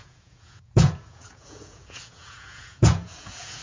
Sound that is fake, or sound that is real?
fake